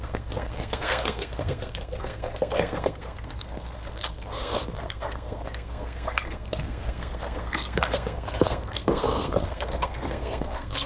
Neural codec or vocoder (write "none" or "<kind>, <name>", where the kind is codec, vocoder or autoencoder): codec, SNAC